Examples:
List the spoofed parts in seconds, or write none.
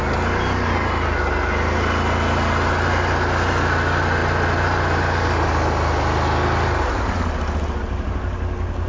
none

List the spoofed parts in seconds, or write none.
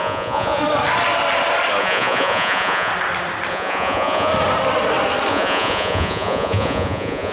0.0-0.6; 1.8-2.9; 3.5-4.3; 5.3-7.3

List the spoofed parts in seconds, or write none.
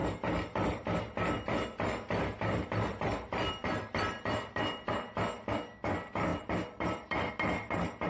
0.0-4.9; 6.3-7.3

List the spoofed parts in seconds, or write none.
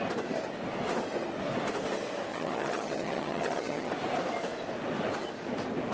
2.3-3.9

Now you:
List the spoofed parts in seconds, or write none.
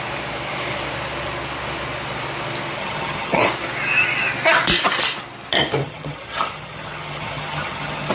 2.8-3.4; 5.8-8.1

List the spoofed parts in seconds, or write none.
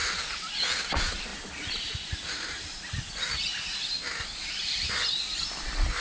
none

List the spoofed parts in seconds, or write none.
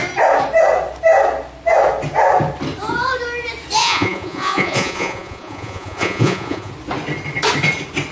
3.8-6.7